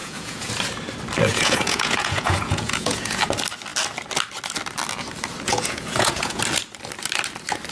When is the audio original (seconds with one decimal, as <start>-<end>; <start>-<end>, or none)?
0.5-1.3; 3.2-5.5; 6.4-7.7